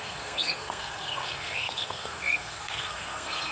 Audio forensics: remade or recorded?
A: remade